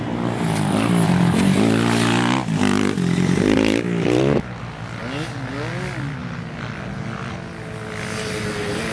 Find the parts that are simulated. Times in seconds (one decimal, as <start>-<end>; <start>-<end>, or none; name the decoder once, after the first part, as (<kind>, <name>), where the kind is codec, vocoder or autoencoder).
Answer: none